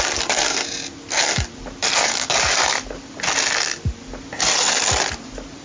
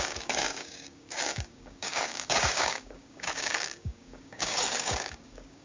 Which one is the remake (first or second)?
second